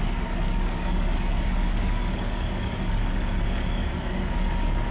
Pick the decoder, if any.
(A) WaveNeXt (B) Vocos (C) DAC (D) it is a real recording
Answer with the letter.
C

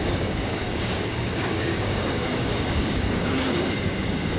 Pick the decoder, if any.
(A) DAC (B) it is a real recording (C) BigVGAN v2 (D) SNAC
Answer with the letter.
A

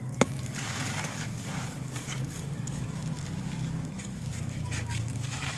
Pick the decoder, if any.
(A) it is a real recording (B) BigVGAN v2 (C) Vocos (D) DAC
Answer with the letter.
D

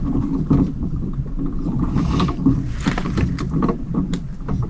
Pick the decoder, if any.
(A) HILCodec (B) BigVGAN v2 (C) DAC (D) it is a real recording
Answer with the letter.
D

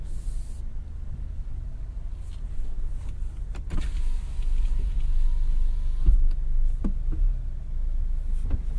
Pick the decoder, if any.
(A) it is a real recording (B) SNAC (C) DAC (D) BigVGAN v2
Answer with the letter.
A